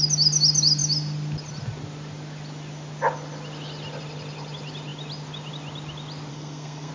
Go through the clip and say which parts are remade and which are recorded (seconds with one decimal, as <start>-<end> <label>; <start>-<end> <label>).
0.0-6.3 recorded; 6.3-6.9 remade